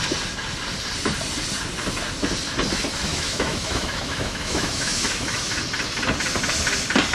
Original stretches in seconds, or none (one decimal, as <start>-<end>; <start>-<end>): 0.0-3.1; 5.6-7.1